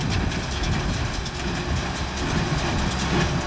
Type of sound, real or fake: real